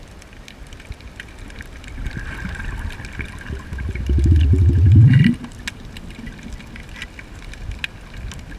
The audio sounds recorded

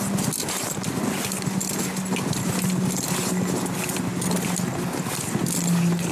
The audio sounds recorded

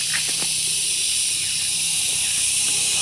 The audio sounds recorded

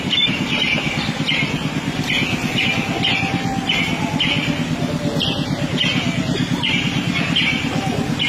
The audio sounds recorded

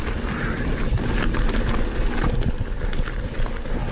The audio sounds recorded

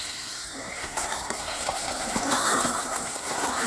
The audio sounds remade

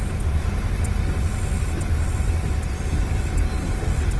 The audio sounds recorded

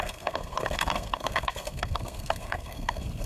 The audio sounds remade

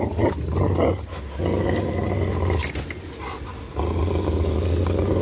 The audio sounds recorded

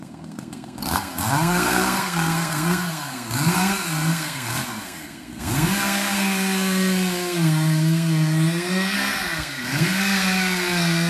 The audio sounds remade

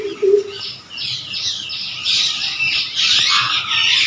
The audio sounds recorded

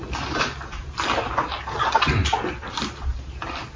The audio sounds recorded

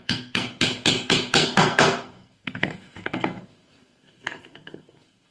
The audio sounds remade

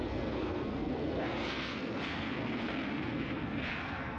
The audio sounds remade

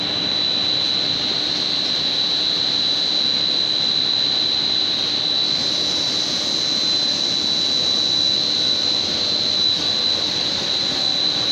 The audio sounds recorded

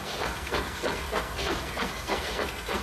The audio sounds remade